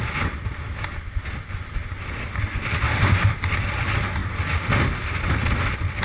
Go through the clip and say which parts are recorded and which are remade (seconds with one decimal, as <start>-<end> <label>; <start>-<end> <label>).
0.0-6.0 recorded